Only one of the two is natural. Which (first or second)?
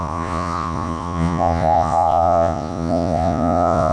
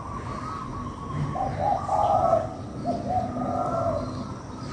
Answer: second